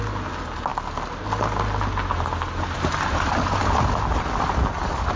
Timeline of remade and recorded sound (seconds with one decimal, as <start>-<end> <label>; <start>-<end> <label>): 0.0-5.2 recorded